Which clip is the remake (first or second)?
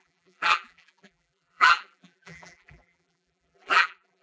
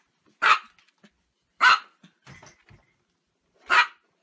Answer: first